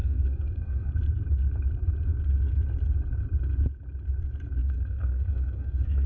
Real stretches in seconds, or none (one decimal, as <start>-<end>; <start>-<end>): 0.9-4.6